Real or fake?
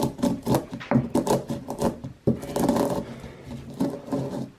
real